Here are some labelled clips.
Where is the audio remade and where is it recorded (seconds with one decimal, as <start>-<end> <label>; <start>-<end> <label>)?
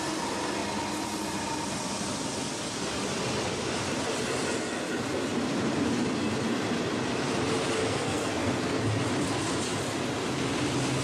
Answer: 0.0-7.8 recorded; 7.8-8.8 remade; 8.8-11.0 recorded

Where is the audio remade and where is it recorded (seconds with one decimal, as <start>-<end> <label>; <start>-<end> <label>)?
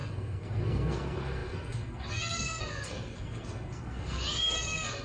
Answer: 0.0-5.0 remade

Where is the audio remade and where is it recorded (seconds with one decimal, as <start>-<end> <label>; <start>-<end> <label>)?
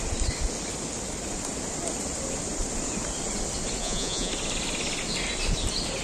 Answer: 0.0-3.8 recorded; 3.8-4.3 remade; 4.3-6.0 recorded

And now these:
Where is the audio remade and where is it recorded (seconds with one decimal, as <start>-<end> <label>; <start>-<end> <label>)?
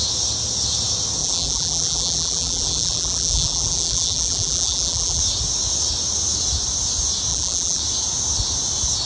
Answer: 0.0-1.2 recorded; 1.2-5.2 remade; 5.2-7.3 recorded; 7.3-7.8 remade; 7.8-9.1 recorded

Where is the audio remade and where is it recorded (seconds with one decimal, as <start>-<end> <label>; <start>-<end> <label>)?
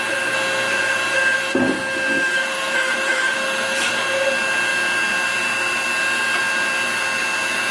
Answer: 0.0-1.8 recorded; 1.8-3.9 remade; 3.9-7.7 recorded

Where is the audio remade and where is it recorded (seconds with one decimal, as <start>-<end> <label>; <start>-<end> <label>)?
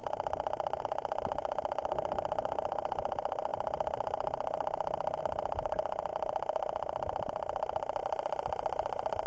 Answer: 0.0-9.3 recorded